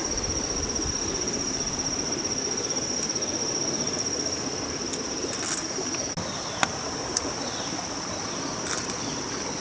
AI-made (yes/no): no